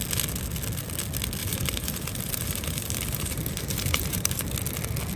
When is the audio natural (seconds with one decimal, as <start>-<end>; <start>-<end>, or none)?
0.0-1.4; 4.5-5.2